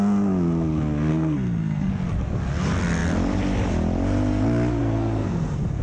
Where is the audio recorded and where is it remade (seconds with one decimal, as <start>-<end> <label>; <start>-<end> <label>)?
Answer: 0.0-1.1 recorded; 1.1-1.9 remade; 1.9-4.8 recorded; 4.8-5.8 remade